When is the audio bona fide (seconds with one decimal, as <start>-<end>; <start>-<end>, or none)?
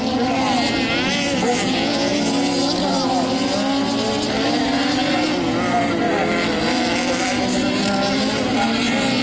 0.0-9.2